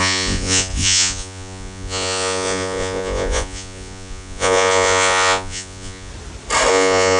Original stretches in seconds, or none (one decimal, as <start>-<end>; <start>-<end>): 6.1-6.7